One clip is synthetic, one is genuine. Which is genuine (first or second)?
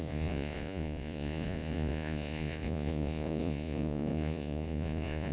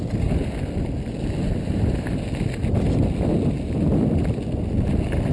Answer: second